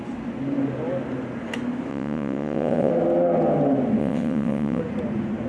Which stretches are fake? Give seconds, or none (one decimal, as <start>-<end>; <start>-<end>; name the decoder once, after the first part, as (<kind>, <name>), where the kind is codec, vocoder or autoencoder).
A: 1.9-2.9 (vocoder, WaveNeXt); 4.0-4.8